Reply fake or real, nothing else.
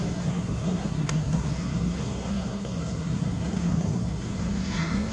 fake